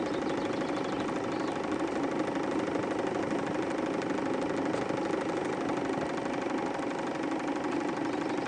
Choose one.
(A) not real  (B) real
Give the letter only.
B